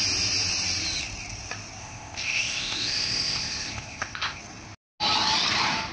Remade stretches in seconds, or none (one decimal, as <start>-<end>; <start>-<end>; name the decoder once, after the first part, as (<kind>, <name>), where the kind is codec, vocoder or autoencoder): 1.8-4.4 (codec, ZipCodec)